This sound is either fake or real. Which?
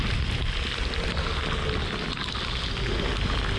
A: real